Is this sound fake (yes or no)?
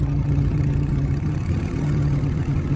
yes